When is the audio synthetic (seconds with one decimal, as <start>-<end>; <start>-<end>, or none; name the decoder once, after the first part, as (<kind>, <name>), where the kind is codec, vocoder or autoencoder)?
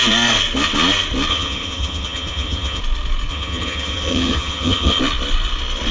1.3-2.8 (vocoder, HiFi-GAN); 3.3-5.0